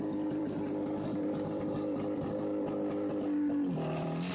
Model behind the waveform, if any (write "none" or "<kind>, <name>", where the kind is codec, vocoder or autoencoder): vocoder, BigVGAN v2